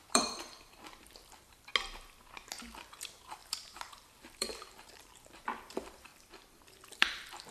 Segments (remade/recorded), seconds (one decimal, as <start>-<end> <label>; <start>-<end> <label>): 0.0-1.7 remade; 1.7-2.6 recorded; 2.6-6.1 remade; 6.1-6.9 recorded; 6.9-7.5 remade